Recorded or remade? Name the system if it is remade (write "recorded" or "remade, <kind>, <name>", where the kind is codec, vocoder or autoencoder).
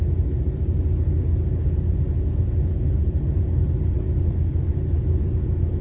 recorded